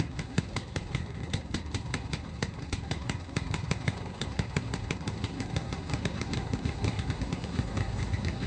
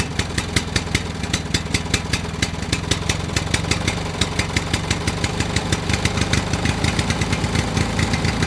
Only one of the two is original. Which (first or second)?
second